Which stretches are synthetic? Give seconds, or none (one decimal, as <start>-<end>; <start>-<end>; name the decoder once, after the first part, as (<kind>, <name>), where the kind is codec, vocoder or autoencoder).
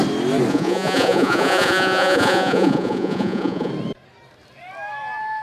0.5-3.7 (vocoder, Vocos)